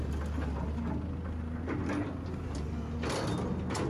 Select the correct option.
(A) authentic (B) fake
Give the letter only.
A